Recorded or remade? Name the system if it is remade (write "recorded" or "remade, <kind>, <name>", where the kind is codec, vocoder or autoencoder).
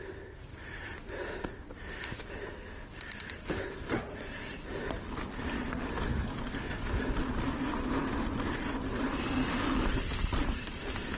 recorded